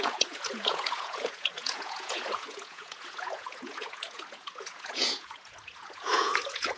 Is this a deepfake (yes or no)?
yes